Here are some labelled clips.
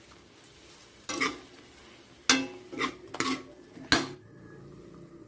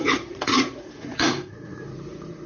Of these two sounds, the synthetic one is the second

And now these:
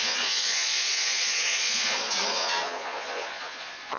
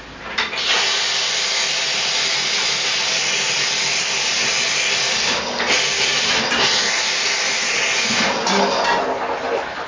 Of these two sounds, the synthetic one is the first